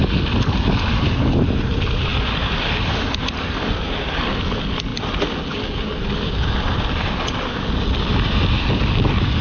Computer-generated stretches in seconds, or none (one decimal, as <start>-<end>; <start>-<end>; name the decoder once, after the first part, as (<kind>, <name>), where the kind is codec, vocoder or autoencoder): none